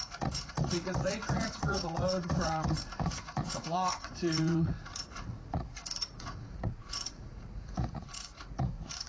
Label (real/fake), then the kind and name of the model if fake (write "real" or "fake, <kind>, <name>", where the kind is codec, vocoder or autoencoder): fake, vocoder, Vocos